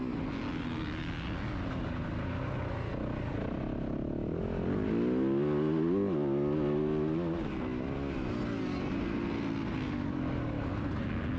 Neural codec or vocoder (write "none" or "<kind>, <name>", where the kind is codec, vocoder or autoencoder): none